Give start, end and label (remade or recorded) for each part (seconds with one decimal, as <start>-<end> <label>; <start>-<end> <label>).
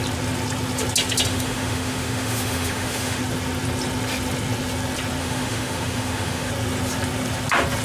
0.0-1.3 recorded; 1.3-3.2 remade; 3.2-5.2 recorded; 5.2-6.5 remade; 6.5-7.8 recorded